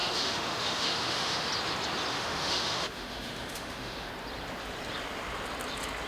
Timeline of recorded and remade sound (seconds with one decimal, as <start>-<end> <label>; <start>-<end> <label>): 0.0-1.5 remade; 1.5-2.1 recorded; 2.1-4.1 remade; 4.1-6.1 recorded